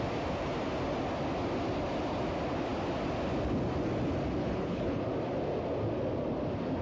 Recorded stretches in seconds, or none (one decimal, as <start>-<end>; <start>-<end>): 0.0-4.4; 5.0-6.8